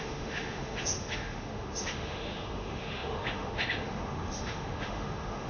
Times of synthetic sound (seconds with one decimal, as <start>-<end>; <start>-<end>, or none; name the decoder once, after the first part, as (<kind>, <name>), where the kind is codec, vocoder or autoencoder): 0.0-5.5 (autoencoder, DAC-VAE)